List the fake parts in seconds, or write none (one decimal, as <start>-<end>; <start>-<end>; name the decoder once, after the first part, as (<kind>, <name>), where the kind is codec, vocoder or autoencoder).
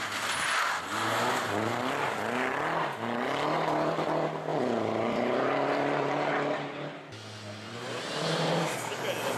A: 4.5-6.3 (vocoder, BigVGAN v2)